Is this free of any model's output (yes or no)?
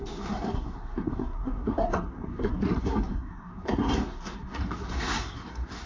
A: no